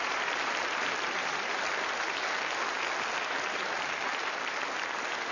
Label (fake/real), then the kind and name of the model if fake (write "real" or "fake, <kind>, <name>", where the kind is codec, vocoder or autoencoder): real